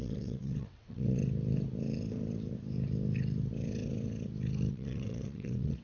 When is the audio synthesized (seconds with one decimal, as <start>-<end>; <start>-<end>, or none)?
0.0-1.2; 4.7-5.8